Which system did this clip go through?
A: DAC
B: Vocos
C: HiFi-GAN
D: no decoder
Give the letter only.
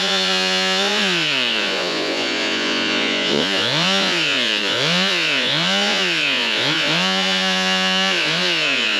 B